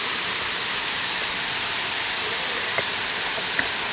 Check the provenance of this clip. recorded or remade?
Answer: remade